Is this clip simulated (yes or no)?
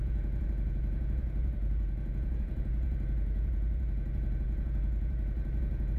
yes